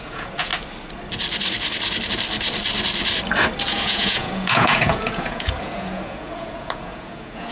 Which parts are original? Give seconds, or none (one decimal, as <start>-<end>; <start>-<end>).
0.5-3.7